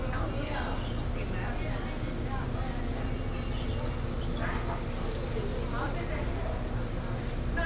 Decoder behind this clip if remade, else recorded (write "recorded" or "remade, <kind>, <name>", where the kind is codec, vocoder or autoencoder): recorded